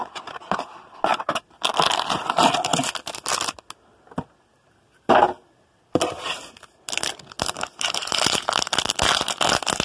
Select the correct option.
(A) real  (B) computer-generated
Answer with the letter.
A